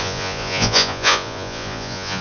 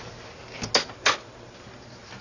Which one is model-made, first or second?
first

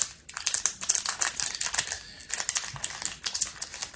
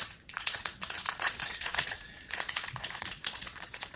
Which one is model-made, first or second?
second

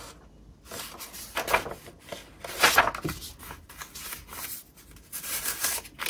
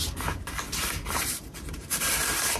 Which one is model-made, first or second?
second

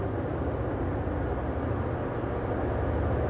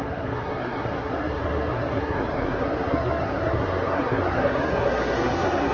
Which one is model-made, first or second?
second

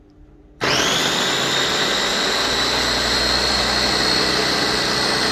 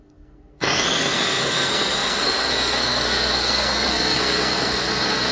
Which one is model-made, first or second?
second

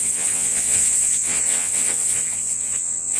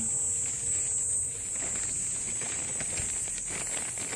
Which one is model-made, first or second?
first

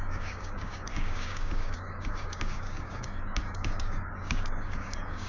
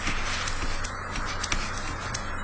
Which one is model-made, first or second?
first